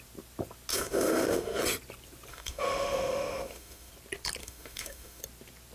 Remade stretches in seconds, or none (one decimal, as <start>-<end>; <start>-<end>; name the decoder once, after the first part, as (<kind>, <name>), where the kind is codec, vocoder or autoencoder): 0.7-1.6 (autoencoder, DAC-VAE); 2.3-3.9; 4.4-5.2